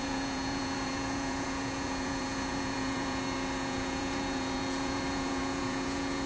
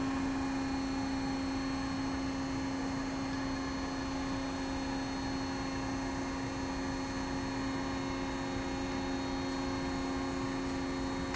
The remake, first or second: first